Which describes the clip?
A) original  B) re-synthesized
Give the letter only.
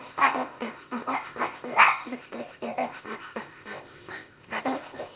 B